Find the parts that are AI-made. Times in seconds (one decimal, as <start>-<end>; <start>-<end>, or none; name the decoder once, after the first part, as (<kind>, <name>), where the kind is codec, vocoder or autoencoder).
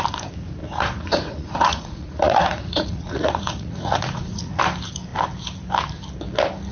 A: 0.6-4.6 (vocoder, Vocos)